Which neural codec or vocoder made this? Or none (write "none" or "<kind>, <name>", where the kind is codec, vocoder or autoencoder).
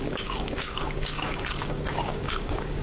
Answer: codec, DAC